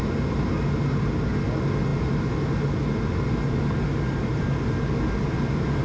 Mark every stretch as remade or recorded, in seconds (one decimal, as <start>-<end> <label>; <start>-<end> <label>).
0.0-5.8 recorded